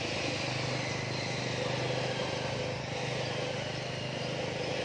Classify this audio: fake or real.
real